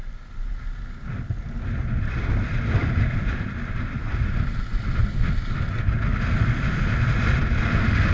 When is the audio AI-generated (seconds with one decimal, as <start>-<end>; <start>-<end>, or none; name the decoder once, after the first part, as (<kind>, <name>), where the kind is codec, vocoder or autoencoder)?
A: none